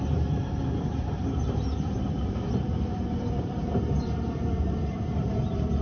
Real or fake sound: fake